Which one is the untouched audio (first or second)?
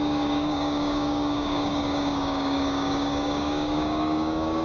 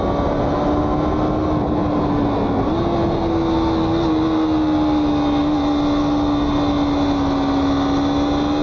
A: second